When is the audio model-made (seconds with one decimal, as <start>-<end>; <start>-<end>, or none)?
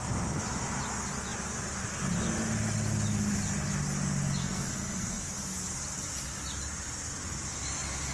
4.4-5.3